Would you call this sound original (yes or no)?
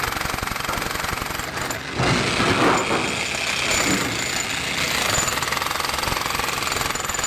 yes